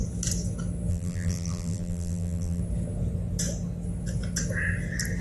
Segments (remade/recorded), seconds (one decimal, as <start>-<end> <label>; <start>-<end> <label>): 0.0-0.9 recorded; 0.9-2.6 remade; 2.6-5.2 recorded